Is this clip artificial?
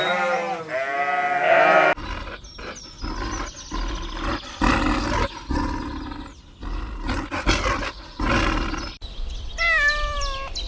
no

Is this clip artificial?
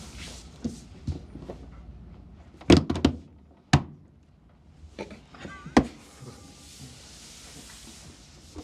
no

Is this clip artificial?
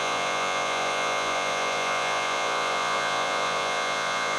yes